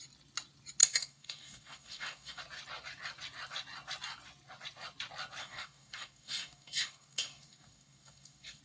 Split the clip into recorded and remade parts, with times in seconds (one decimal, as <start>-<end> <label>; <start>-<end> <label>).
0.0-0.8 recorded; 0.8-2.4 remade; 2.4-5.4 recorded; 5.4-8.6 remade